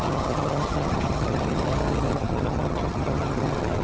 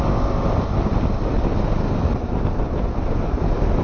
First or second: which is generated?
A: first